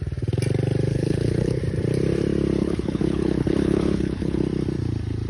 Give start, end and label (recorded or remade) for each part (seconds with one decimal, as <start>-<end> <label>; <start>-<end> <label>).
0.0-0.9 recorded; 0.9-1.6 remade; 1.6-2.6 recorded; 2.6-4.4 remade; 4.4-5.3 recorded